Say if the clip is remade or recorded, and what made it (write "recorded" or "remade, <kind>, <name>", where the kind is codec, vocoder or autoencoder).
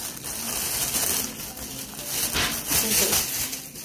recorded